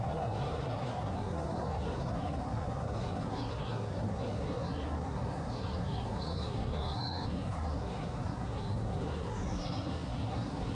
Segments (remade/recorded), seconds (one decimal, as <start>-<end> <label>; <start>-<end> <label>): 0.0-10.7 remade